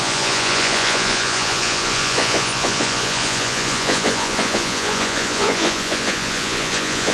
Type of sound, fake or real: fake